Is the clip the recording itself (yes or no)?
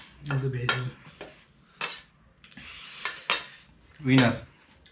yes